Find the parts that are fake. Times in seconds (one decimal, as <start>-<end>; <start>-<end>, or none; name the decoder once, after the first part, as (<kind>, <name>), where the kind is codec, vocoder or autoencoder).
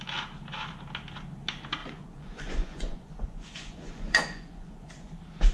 1.8-5.1 (vocoder, Vocos)